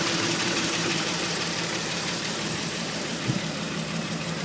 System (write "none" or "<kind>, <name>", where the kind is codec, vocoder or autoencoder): vocoder, BigVGAN v2